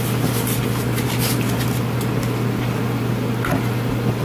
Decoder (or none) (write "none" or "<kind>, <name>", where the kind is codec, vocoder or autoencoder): none